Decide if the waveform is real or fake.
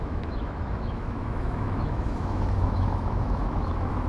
fake